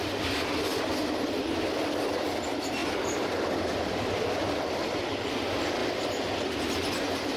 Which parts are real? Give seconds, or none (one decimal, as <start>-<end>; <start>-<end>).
0.0-0.7; 2.0-2.8; 5.2-5.8; 6.4-7.4